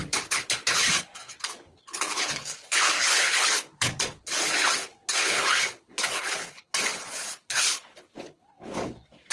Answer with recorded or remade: remade